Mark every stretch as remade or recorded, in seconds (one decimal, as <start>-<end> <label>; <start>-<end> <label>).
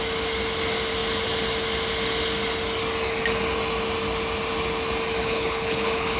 0.0-5.2 recorded; 5.2-6.2 remade